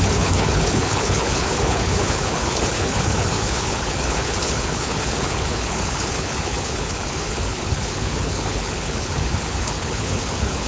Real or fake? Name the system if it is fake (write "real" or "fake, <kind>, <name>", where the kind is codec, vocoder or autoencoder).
fake, codec, HILCodec